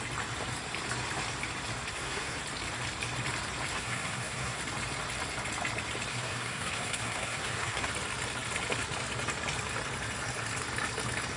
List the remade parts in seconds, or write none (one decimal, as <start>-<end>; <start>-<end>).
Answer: 1.9-2.4; 3.7-4.6; 6.1-7.9